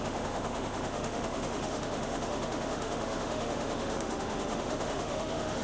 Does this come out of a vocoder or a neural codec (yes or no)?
yes